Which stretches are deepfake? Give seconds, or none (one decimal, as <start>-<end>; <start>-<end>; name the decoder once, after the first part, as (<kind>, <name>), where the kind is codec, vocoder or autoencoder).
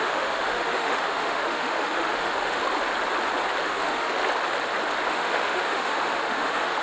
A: 0.0-2.6 (autoencoder, DAC-VAE); 3.6-4.2; 5.1-6.8